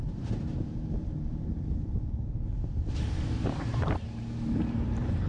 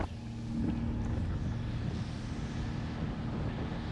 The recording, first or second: second